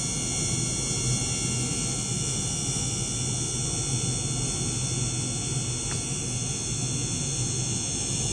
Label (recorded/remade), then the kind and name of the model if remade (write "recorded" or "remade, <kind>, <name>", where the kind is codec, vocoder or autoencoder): recorded